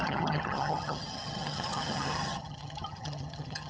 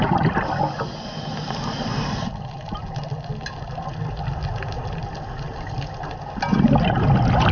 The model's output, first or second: first